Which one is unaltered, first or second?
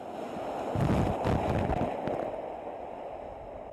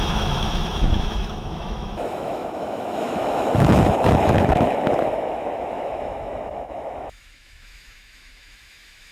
first